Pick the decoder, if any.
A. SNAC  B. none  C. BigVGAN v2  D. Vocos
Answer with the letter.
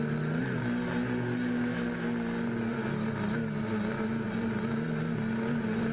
B